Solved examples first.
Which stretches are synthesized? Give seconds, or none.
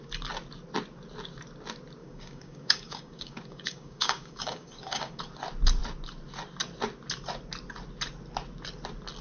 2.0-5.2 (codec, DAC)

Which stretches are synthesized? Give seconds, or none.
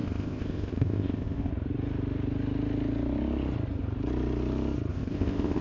0.0-1.5 (codec, ZipCodec); 4.9-5.6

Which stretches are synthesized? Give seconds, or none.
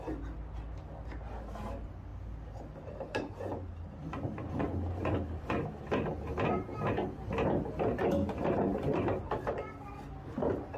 8.7-9.4 (vocoder, BigVGAN v2)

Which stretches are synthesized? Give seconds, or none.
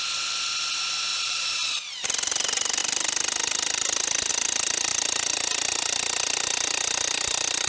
1.1-1.7 (vocoder, BigVGAN v2)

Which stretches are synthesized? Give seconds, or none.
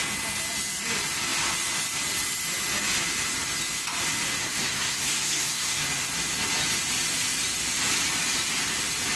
4.4-5.8 (codec, SNAC)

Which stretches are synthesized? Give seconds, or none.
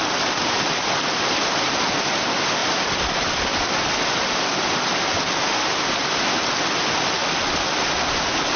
none